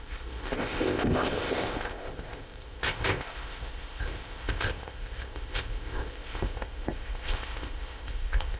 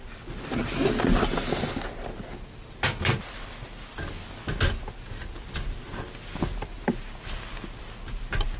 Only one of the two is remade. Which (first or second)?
first